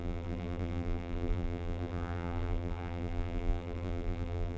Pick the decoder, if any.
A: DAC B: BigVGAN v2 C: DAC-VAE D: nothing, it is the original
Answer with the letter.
B